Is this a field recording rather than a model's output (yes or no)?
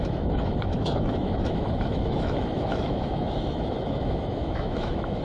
no